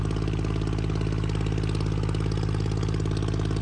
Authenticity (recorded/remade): recorded